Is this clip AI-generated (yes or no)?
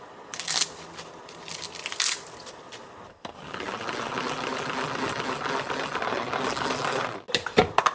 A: no